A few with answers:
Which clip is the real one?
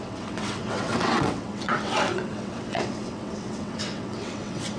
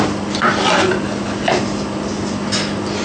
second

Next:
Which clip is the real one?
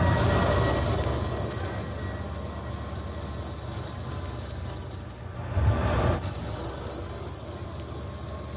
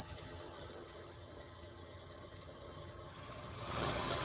first